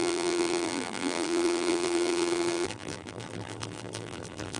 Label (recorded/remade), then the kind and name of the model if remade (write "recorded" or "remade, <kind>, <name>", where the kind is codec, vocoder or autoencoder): remade, vocoder, BigVGAN v2